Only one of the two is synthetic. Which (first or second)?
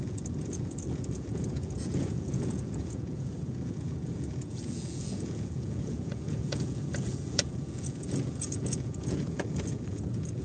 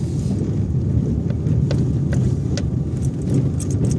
first